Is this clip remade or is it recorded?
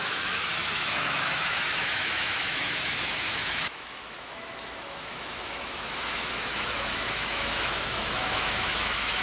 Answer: remade